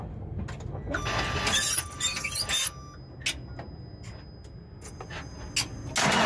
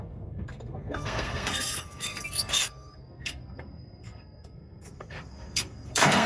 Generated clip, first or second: second